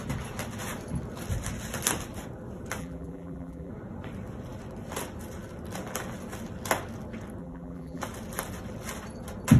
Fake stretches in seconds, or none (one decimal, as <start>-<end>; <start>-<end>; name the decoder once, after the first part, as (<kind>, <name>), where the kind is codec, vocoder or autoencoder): 2.8-3.7 (vocoder, BigVGAN v2); 7.4-8.0